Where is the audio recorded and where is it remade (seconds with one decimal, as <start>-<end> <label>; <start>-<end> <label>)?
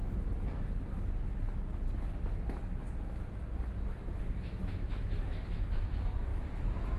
0.0-4.2 recorded; 4.2-7.0 remade